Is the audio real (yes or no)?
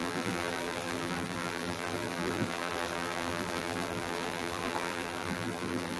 no